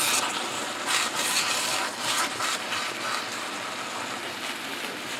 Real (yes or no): yes